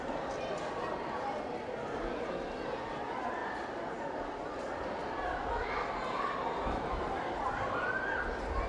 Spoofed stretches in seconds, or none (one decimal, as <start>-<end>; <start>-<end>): none